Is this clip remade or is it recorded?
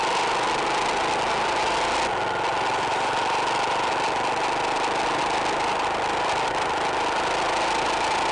recorded